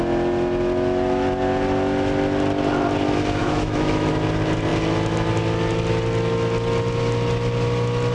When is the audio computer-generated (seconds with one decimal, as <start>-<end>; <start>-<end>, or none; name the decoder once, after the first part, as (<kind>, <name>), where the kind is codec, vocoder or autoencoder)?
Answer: 3.4-4.1 (autoencoder, DAC-VAE)